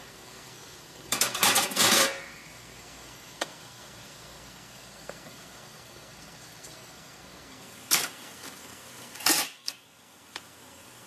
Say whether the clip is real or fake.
fake